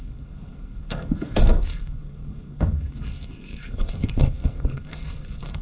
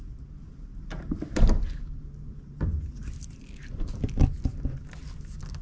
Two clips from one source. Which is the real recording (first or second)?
second